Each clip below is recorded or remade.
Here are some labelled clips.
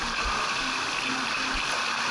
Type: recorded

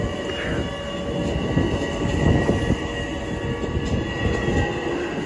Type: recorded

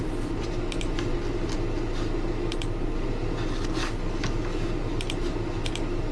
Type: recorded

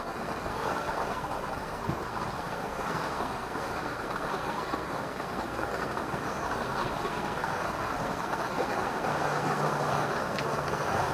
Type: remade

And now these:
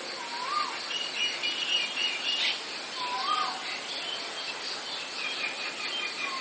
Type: recorded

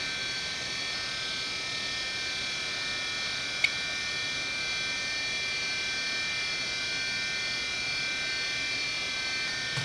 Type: recorded